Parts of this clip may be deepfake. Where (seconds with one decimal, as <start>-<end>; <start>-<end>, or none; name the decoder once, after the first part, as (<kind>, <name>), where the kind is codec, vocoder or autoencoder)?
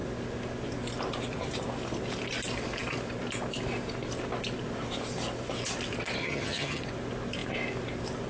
6.2-6.8 (vocoder, HiFi-GAN)